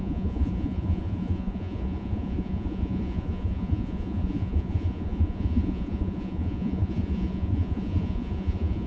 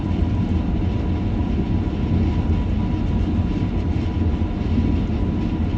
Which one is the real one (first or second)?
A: second